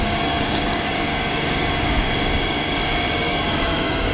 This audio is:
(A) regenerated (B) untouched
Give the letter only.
A